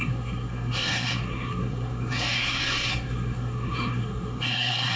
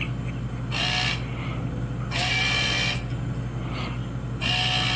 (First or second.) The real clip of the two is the second